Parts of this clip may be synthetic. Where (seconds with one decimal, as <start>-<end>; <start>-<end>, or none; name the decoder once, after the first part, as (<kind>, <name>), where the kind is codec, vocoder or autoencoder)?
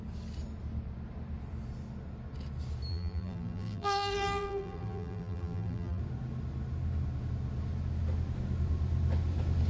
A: 2.9-6.0 (vocoder, BigVGAN v2)